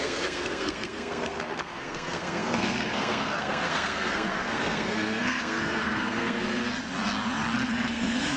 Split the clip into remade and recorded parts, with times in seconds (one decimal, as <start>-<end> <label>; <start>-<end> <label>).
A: 0.0-6.6 remade; 6.6-7.7 recorded; 7.7-8.4 remade